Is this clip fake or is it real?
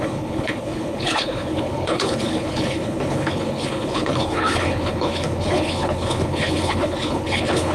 fake